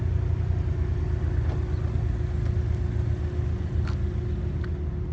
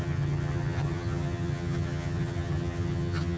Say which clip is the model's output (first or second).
second